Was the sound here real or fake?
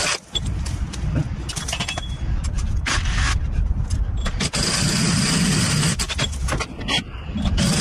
fake